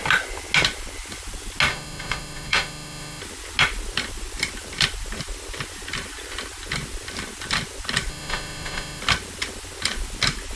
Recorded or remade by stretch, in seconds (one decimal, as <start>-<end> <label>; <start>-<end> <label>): 0.0-1.7 recorded; 1.7-3.2 remade; 3.2-8.1 recorded; 8.1-9.0 remade; 9.0-10.6 recorded